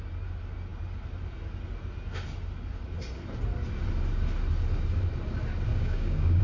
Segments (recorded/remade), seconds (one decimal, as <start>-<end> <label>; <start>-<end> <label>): 0.0-5.7 recorded; 5.7-6.4 remade